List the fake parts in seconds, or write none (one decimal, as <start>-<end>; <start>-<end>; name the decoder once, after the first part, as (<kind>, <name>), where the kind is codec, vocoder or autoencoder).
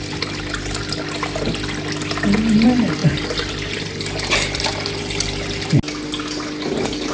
none